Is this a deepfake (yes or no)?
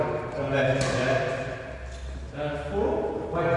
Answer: no